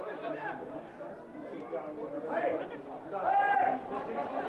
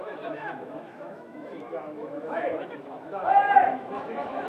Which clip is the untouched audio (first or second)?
first